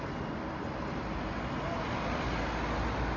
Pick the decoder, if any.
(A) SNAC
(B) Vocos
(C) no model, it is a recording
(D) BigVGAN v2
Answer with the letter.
C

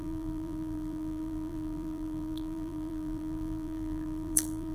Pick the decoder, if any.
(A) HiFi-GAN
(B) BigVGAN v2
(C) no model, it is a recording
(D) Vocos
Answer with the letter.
B